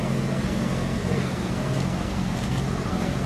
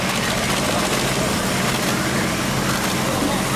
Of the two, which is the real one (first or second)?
second